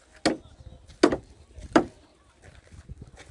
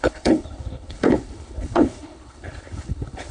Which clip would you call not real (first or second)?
second